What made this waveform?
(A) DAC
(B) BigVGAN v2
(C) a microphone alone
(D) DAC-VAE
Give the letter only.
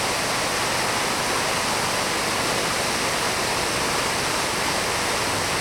C